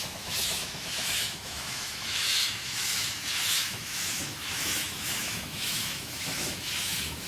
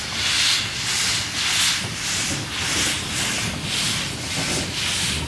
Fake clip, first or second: first